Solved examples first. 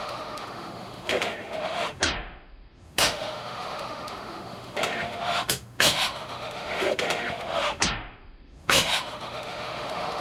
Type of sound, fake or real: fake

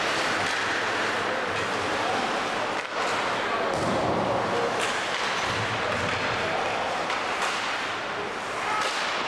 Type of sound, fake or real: real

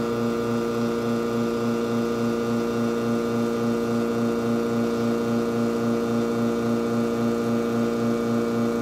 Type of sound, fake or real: real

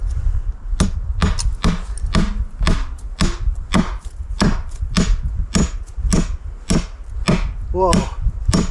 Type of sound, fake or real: real